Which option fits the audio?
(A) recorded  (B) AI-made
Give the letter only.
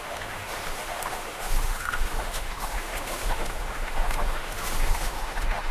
B